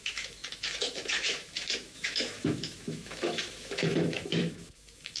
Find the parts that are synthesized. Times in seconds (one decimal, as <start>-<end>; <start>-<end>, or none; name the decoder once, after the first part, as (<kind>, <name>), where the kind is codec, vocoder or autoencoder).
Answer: 0.0-5.2 (autoencoder, DAC-VAE)